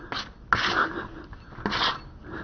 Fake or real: real